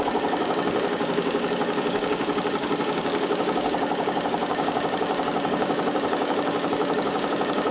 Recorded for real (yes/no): no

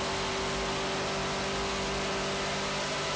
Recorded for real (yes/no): yes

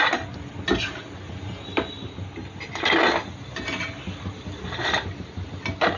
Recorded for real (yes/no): yes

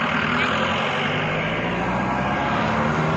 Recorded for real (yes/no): yes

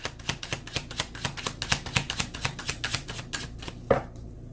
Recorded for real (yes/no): yes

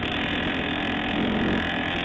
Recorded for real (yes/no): yes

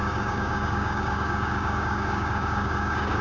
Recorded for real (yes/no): no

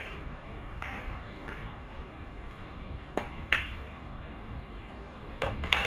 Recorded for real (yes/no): no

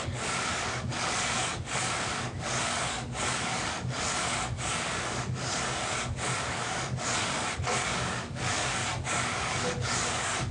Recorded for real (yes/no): no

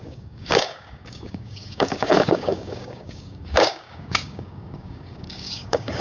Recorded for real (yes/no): no